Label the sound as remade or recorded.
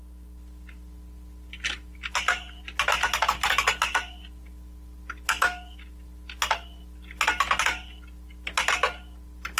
recorded